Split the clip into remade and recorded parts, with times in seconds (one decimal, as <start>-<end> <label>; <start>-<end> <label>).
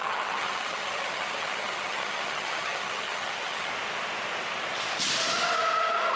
0.0-3.7 remade; 3.7-6.2 recorded